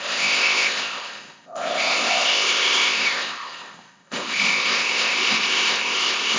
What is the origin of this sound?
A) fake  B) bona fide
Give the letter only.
A